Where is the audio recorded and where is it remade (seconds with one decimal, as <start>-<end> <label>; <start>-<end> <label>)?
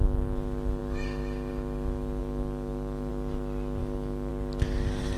0.0-2.2 recorded; 2.2-3.1 remade; 3.1-3.8 recorded; 3.8-4.3 remade; 4.3-5.2 recorded